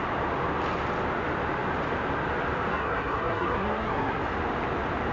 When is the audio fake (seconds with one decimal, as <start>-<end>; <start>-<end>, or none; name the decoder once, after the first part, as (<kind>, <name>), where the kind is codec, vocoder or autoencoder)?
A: 2.7-4.2 (codec, SNAC)